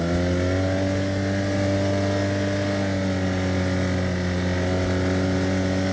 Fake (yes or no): no